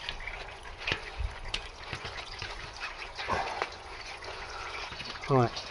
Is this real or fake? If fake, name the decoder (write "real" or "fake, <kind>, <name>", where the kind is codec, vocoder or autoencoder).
fake, vocoder, Vocos